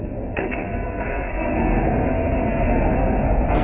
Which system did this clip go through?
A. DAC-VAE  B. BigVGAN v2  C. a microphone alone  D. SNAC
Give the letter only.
D